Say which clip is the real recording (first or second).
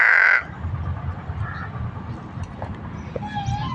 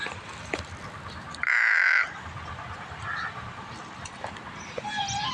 first